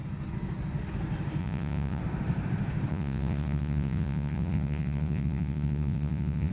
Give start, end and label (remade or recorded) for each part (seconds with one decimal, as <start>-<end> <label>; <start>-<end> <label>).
0.0-1.4 recorded; 1.4-2.0 remade; 2.0-2.9 recorded; 2.9-6.5 remade

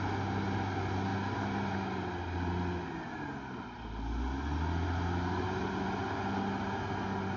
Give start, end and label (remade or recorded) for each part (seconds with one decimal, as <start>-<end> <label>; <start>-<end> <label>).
0.0-7.4 recorded

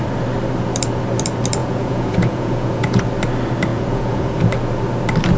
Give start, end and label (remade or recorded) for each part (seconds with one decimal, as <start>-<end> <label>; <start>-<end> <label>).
0.0-1.6 recorded; 1.6-3.0 remade; 3.0-3.7 recorded; 3.7-4.4 remade; 4.4-5.4 recorded

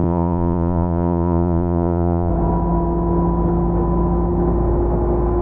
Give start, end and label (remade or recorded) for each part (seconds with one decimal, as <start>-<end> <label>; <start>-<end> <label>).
0.0-2.3 remade; 2.3-5.4 recorded

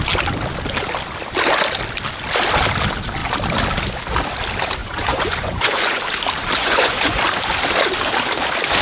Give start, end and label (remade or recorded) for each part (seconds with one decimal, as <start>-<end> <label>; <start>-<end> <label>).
0.0-4.8 recorded; 4.8-6.0 remade; 6.0-6.6 recorded; 6.6-7.2 remade; 7.2-8.8 recorded

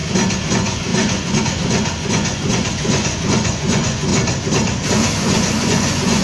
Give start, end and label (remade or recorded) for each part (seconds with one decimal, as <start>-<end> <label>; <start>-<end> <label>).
0.0-0.5 recorded; 0.5-4.1 remade; 4.1-4.9 recorded; 4.9-6.2 remade

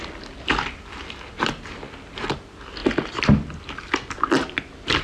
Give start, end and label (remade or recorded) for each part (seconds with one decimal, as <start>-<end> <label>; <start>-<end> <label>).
0.0-5.0 recorded

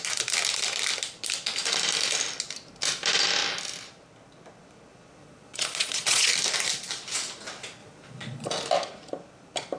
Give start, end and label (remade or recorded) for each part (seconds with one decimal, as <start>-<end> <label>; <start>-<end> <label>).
0.0-5.2 recorded; 5.2-6.3 remade; 6.3-7.8 recorded; 7.8-8.5 remade; 8.5-9.8 recorded